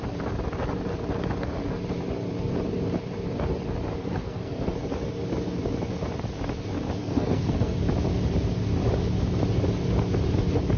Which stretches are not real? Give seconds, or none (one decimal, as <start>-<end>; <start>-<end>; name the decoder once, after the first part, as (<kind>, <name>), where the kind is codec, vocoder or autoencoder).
4.0-4.7 (codec, SNAC); 7.0-7.8